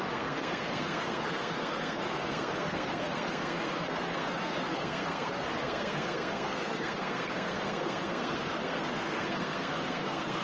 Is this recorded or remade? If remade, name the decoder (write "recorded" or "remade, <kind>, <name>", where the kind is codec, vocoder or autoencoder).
remade, codec, SNAC